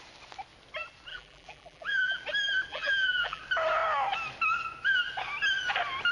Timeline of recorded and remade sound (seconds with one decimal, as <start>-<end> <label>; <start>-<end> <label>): 0.0-1.1 recorded; 1.1-2.2 remade; 2.2-2.7 recorded; 2.7-3.4 remade; 3.4-6.1 recorded